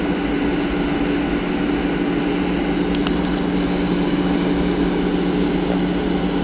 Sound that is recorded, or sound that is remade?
recorded